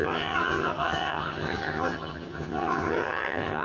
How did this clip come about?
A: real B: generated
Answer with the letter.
B